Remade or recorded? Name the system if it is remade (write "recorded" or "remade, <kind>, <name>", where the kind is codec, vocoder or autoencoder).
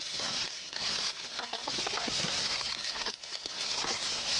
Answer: remade, codec, SNAC